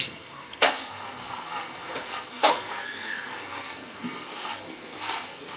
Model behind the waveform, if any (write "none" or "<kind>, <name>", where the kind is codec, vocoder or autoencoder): codec, SNAC